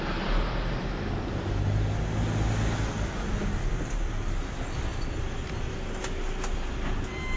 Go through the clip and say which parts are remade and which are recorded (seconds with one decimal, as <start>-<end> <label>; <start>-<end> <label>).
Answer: 0.0-7.4 recorded